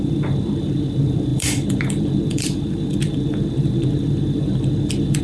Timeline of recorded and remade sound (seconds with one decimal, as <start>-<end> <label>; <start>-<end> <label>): 0.0-5.2 remade